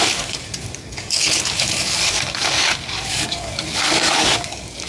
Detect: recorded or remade remade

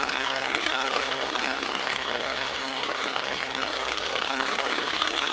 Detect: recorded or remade remade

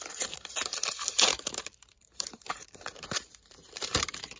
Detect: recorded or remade remade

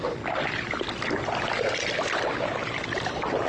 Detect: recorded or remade recorded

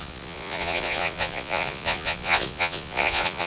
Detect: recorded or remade remade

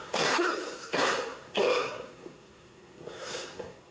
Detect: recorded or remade remade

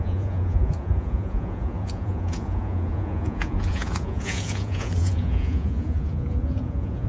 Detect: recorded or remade remade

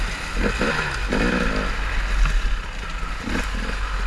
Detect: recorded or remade recorded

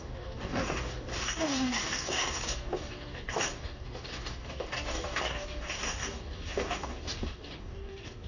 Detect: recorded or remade remade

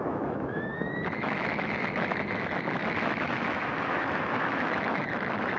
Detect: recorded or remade remade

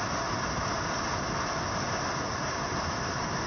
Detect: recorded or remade recorded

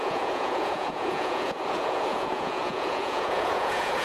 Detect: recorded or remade remade